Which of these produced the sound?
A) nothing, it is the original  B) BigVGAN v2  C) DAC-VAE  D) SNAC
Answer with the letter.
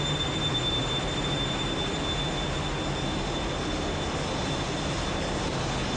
A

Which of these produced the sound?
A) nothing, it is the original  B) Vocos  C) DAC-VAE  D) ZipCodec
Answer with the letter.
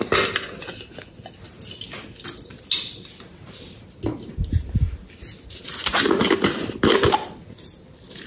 A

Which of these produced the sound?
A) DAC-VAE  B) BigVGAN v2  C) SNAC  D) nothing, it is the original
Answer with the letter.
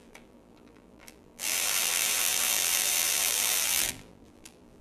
B